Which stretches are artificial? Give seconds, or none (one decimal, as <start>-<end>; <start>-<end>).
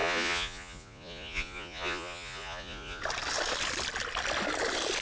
0.0-3.0